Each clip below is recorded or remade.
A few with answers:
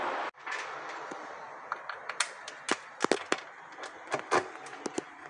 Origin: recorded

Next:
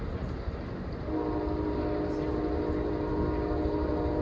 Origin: recorded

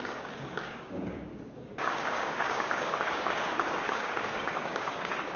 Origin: remade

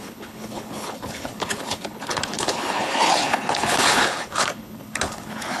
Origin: remade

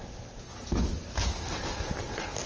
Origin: recorded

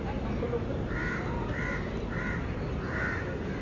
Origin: remade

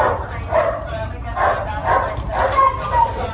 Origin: recorded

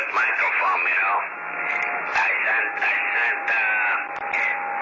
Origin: recorded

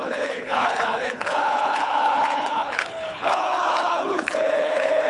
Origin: remade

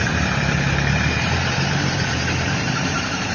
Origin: remade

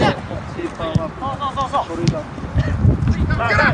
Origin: recorded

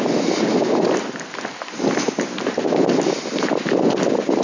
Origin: recorded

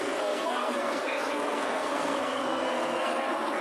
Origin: remade